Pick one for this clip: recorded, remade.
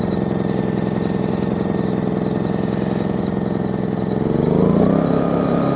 recorded